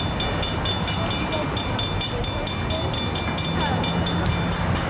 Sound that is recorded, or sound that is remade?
recorded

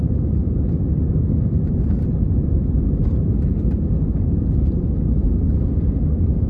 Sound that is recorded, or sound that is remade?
remade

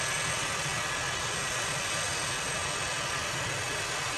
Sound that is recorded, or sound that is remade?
recorded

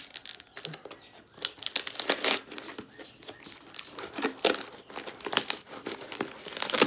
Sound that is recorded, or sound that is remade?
recorded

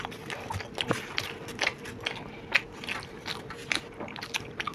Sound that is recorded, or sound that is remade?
recorded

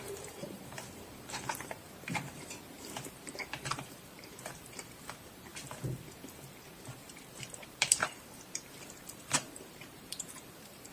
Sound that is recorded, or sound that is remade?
remade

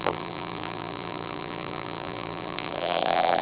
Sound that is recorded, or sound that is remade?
remade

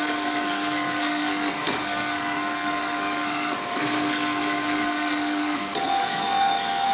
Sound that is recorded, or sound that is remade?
remade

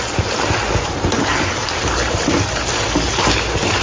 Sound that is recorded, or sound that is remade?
remade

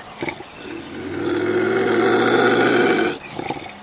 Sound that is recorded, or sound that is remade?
recorded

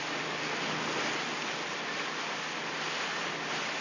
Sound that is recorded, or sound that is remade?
recorded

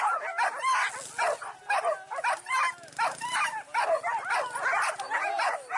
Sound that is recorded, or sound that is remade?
recorded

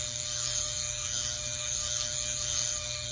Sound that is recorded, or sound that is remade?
remade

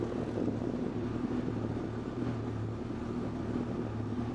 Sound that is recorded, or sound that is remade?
recorded